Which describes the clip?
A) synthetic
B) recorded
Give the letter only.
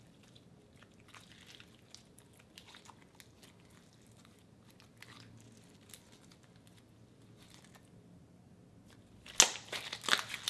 B